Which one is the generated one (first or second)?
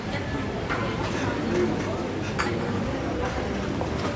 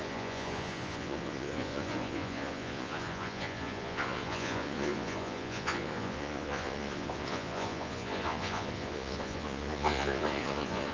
second